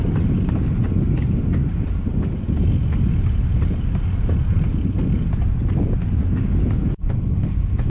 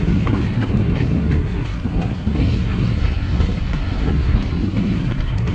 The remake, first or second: second